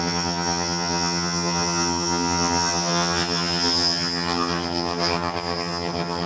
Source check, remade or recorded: remade